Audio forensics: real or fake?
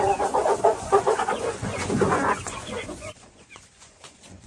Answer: fake